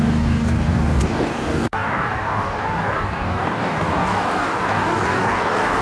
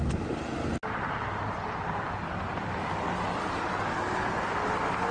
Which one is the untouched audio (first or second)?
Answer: second